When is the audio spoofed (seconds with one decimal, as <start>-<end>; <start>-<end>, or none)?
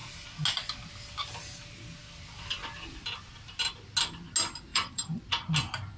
2.0-2.6; 4.7-5.3